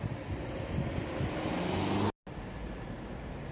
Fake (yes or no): no